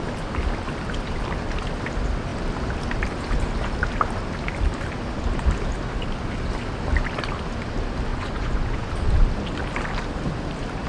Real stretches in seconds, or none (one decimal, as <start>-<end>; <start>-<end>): 0.0-8.1; 8.9-10.9